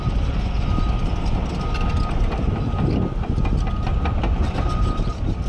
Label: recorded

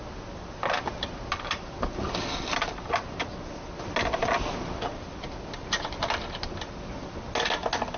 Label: recorded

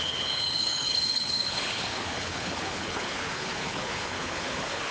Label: remade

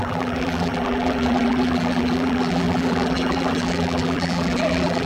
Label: remade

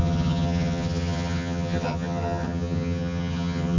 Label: remade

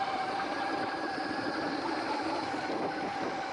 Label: recorded